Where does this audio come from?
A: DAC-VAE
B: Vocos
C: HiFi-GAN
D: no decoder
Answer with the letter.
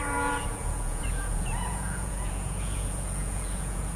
B